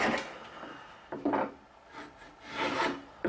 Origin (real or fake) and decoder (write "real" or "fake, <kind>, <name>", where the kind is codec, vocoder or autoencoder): real